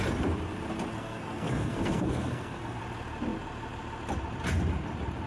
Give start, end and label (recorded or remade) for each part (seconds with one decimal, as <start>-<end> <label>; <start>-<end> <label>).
0.0-0.9 recorded; 0.9-2.8 remade; 2.8-5.3 recorded